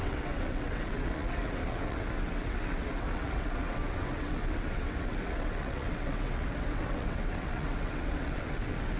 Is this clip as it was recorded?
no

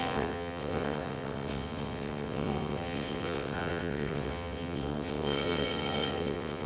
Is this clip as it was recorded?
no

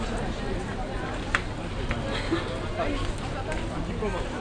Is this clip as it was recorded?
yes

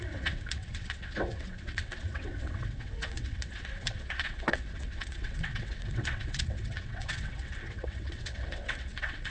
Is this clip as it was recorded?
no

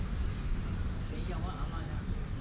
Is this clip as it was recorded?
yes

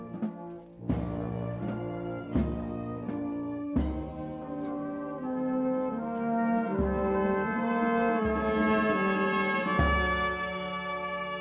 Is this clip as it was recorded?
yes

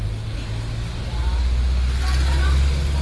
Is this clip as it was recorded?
yes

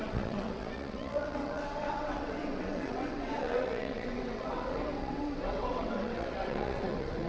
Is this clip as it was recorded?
no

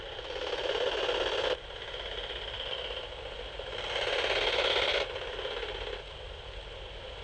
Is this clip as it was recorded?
yes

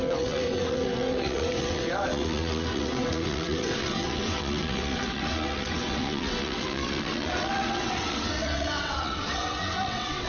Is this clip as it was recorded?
no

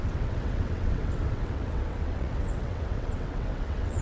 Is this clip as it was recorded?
no